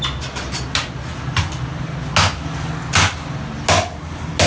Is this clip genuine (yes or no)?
yes